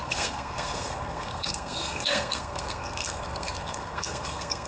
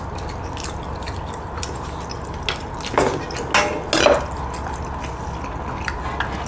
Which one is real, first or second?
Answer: second